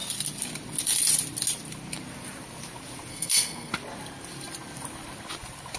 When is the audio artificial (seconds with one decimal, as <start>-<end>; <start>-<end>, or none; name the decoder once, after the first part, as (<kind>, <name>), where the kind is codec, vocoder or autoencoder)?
3.1-3.7 (codec, SNAC)